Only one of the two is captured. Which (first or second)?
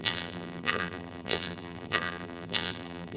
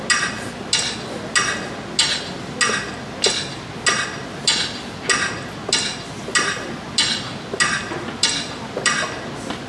second